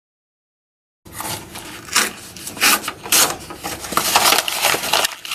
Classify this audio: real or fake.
real